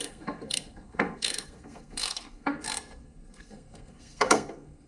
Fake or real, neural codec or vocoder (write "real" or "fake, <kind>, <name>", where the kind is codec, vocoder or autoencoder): fake, codec, SNAC